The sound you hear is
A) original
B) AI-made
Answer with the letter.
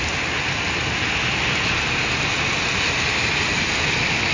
A